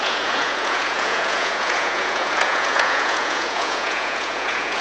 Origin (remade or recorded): remade